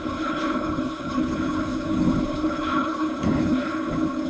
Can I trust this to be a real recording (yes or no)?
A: no